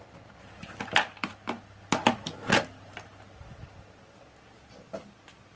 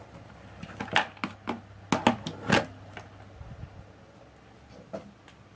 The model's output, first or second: first